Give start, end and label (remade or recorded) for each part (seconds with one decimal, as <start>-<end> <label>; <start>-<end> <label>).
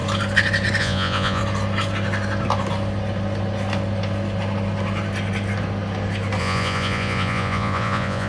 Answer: 0.0-0.8 recorded; 0.8-1.4 remade; 1.4-6.4 recorded; 6.4-8.3 remade